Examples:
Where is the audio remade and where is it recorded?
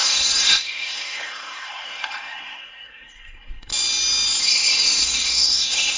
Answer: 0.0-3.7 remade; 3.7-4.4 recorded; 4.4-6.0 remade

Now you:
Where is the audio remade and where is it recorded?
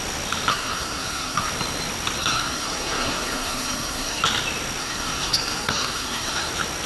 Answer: 0.0-0.5 recorded; 0.5-1.5 remade; 1.5-2.2 recorded; 2.2-4.2 remade; 4.2-4.8 recorded; 4.8-6.5 remade; 6.5-6.9 recorded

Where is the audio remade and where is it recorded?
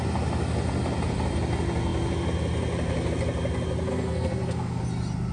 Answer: 0.0-3.9 recorded; 3.9-4.8 remade; 4.8-5.3 recorded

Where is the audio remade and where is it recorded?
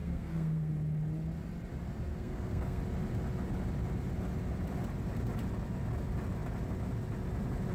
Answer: 0.0-0.7 remade; 0.7-2.1 recorded; 2.1-2.8 remade; 2.8-7.7 recorded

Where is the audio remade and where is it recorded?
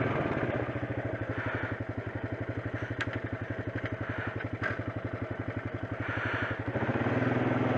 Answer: 0.0-7.8 recorded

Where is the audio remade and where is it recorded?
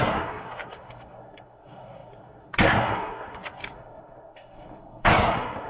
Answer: 0.0-5.7 remade